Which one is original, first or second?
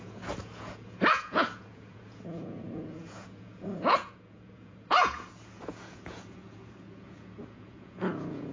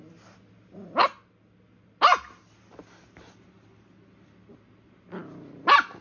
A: second